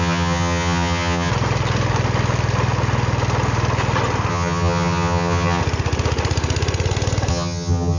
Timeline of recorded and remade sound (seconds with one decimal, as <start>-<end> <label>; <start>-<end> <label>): 0.0-1.3 remade; 1.3-4.3 recorded; 4.3-5.6 remade; 5.6-7.3 recorded; 7.3-8.0 remade